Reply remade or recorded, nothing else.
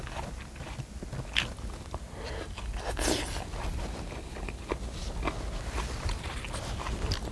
recorded